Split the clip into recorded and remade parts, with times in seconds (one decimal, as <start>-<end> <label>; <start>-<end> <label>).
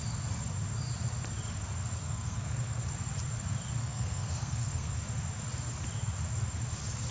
0.0-2.0 recorded; 2.0-2.8 remade; 2.8-3.8 recorded; 3.8-5.0 remade; 5.0-7.1 recorded